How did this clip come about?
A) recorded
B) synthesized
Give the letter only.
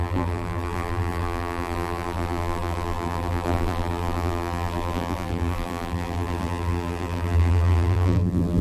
B